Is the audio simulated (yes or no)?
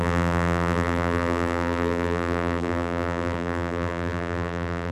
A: yes